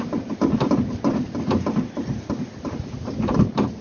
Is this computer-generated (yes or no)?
no